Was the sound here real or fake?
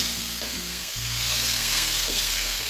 fake